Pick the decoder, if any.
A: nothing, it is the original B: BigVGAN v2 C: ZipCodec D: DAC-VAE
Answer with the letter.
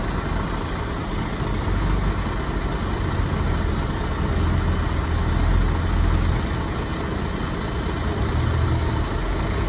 A